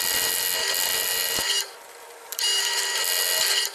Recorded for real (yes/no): yes